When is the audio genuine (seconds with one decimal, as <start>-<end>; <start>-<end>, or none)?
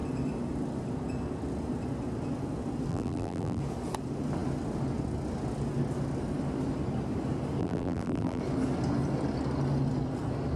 0.0-2.9; 3.6-7.6; 8.4-10.6